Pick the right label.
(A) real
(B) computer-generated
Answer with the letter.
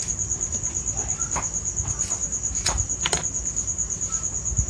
A